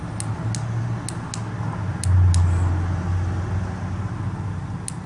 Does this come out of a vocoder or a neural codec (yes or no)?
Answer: no